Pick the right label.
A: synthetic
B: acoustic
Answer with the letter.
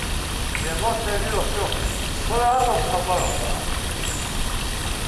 B